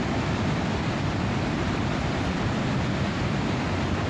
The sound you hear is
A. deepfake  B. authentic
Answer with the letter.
B